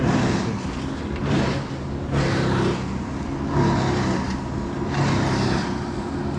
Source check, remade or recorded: recorded